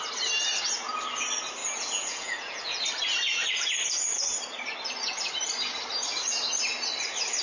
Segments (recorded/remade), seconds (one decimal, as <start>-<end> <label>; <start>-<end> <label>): 0.0-1.6 recorded; 1.6-2.8 remade; 2.8-7.4 recorded